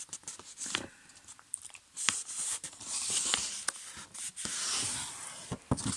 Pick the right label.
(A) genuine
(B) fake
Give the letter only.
A